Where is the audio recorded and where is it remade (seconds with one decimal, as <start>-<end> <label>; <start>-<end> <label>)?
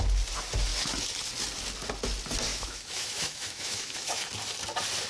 0.0-2.5 recorded; 2.5-4.3 remade; 4.3-5.1 recorded